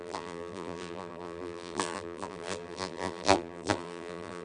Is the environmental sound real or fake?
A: fake